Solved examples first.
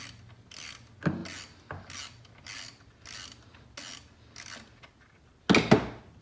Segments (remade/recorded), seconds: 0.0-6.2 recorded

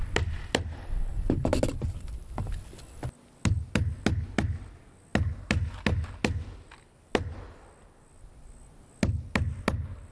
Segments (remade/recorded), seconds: 0.0-1.1 recorded; 1.1-2.2 remade; 2.2-10.1 recorded

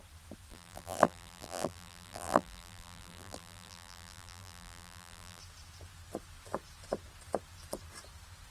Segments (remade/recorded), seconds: 0.0-0.5 recorded; 0.5-5.4 remade; 5.4-8.5 recorded

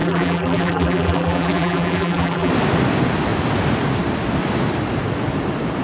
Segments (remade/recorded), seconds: 0.0-2.5 remade; 2.5-5.8 recorded

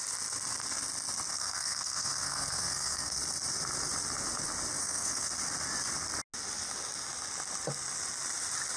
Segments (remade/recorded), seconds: 0.0-1.3 recorded; 1.3-3.2 remade; 3.2-4.8 recorded; 4.8-5.3 remade; 5.3-8.8 recorded